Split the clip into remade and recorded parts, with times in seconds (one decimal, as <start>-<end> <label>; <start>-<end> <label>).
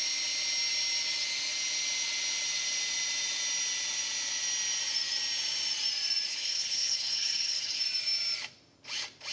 0.0-6.3 recorded; 6.3-7.8 remade; 7.8-9.3 recorded